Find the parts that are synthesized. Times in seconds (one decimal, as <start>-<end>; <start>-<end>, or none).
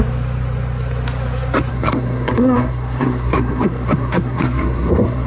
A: 1.7-5.3